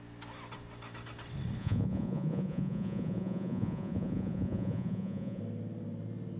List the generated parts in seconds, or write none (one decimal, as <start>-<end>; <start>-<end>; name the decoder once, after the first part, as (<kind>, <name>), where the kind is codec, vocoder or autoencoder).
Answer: 1.6-5.4 (vocoder, Vocos)